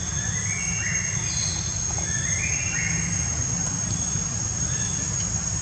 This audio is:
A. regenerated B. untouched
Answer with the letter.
B